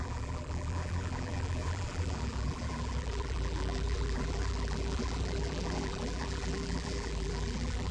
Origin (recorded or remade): remade